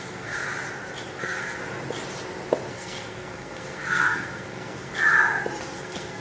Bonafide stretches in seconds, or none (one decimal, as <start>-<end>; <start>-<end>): 0.4-1.2; 1.6-2.7; 4.9-5.6